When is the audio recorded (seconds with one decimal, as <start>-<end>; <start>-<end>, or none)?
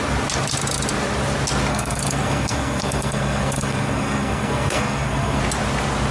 0.0-1.7; 5.4-6.1